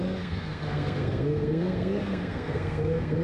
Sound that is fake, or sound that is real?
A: fake